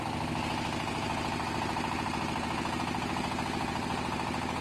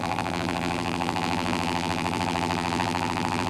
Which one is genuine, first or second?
first